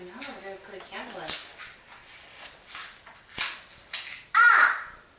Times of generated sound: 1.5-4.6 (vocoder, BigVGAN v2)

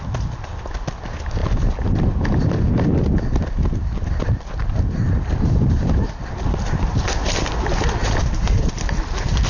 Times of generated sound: none

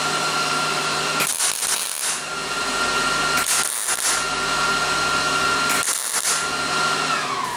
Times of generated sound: 1.8-2.8 (vocoder, BigVGAN v2)

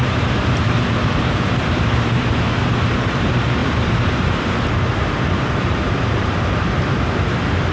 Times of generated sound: 0.0-7.7 (vocoder, BigVGAN v2)

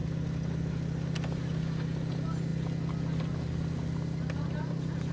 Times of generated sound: none

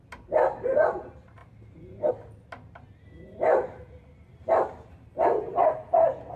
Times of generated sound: none

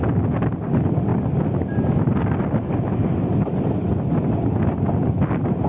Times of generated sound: 1.1-4.5 (vocoder, BigVGAN v2)